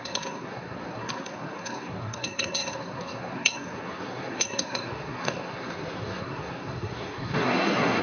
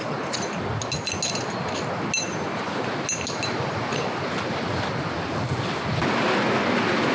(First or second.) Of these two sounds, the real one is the second